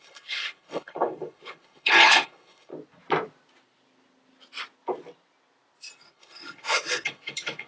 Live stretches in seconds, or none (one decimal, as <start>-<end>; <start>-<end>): 2.7-6.1